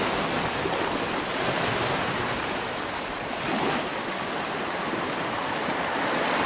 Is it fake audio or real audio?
real